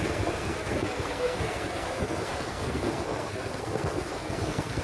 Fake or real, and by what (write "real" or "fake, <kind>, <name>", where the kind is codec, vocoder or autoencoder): fake, codec, SNAC